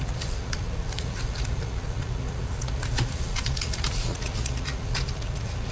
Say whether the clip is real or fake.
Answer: fake